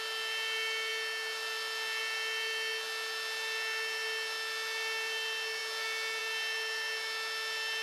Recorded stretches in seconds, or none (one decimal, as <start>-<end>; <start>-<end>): 0.0-7.8